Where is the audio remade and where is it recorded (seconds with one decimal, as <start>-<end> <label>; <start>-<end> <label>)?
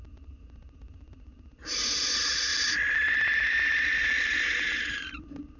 0.0-2.5 remade; 2.5-4.2 recorded; 4.2-5.6 remade